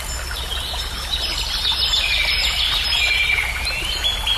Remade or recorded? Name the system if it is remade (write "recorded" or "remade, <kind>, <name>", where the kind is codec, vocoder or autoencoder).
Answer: recorded